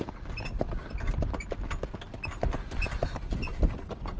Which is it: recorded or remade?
recorded